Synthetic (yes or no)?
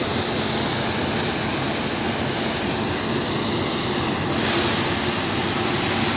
no